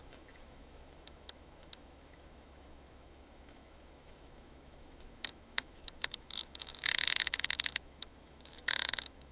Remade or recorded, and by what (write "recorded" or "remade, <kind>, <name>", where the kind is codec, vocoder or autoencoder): remade, autoencoder, DAC-VAE